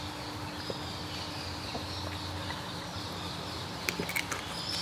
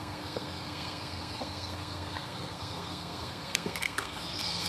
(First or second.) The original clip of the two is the first